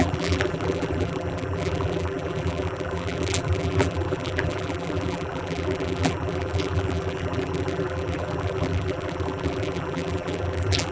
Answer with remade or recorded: remade